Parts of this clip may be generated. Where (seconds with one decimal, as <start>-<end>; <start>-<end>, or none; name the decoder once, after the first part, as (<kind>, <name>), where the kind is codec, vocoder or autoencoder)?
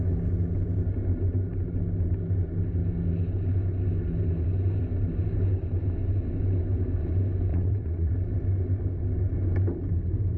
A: 7.5-8.1 (vocoder, WaveNeXt)